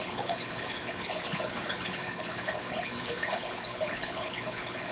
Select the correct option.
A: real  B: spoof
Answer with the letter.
B